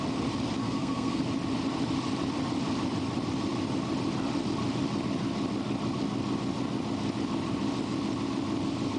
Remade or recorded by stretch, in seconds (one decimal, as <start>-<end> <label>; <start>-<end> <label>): 0.0-0.6 recorded; 0.6-1.2 remade; 1.2-9.0 recorded